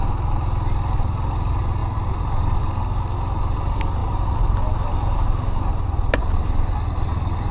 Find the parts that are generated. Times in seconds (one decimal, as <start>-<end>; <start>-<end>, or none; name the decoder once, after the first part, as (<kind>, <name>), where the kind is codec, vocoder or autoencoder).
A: none

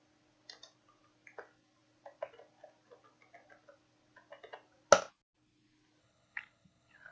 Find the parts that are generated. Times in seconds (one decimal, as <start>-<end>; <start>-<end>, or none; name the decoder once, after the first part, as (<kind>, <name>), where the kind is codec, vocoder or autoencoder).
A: 6.0-7.1 (codec, HILCodec)

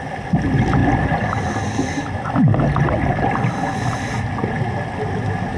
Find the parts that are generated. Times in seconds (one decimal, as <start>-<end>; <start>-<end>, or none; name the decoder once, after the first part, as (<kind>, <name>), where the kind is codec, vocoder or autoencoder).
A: none

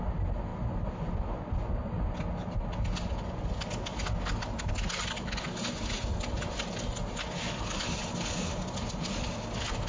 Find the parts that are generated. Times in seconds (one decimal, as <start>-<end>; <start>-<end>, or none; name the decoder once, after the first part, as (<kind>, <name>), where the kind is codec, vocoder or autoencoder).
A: none

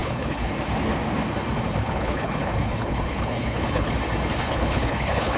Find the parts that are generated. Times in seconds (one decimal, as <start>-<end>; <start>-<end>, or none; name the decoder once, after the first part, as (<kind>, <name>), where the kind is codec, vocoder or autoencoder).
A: 0.0-0.5 (codec, HILCodec); 1.8-3.9; 4.4-5.4

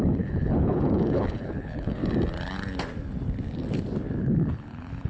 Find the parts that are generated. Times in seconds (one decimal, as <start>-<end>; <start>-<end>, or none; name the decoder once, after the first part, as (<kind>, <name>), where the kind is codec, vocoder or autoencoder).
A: 0.0-2.0 (codec, HILCodec); 4.2-5.1

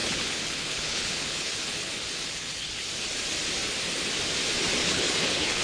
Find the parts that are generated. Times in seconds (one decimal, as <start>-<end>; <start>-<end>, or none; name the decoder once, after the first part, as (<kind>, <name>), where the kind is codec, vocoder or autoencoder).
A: 0.0-2.9 (codec, HILCodec); 4.8-5.6

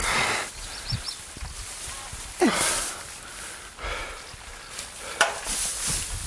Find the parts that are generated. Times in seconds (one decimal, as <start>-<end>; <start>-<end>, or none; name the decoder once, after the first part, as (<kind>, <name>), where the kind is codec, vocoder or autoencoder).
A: none